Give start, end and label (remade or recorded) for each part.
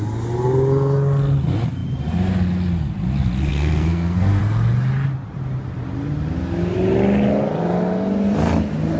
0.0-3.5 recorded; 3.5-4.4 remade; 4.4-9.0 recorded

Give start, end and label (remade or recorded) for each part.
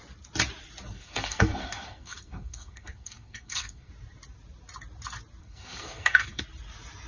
0.0-0.9 recorded; 0.9-3.9 remade; 3.9-5.4 recorded; 5.4-6.4 remade; 6.4-7.1 recorded